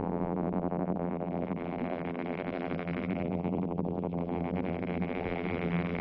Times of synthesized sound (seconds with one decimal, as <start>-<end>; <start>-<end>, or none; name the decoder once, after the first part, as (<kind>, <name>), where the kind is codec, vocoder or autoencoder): 0.0-6.0 (vocoder, BigVGAN v2)